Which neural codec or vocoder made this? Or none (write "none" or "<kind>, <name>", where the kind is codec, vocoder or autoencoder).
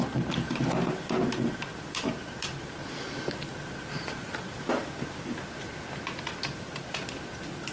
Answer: none